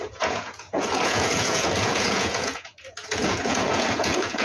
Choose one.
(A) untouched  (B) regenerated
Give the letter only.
B